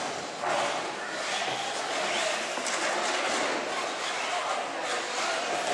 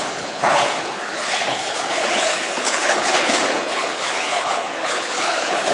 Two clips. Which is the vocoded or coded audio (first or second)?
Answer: second